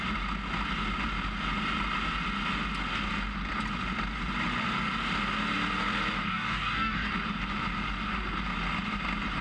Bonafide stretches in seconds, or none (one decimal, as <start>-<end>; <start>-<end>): 0.0-6.3; 7.1-9.4